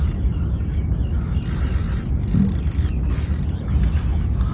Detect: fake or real real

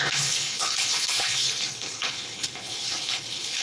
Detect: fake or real fake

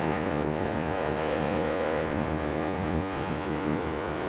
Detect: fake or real fake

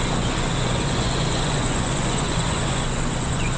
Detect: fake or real fake